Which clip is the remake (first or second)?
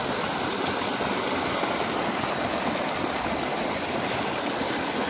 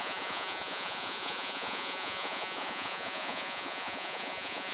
second